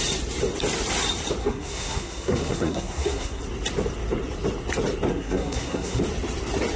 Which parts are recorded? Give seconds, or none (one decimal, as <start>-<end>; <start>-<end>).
0.0-1.4; 3.4-5.1; 6.0-6.8